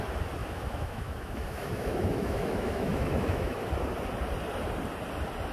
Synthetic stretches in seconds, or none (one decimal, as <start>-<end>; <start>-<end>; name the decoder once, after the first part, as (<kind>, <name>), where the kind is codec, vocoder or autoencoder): 0.4-3.7 (autoencoder, DAC-VAE)